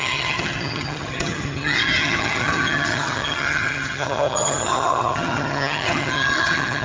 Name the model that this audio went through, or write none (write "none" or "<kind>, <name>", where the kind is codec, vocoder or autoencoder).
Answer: vocoder, HiFi-GAN